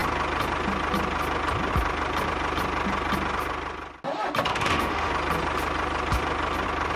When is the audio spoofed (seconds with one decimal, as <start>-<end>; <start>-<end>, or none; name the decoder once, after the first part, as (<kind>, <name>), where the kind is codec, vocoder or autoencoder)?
4.5-5.1 (autoencoder, DAC-VAE)